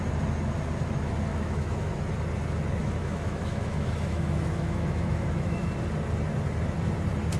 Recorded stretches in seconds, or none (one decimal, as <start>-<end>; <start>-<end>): 0.0-1.3; 1.9-2.8; 5.7-7.4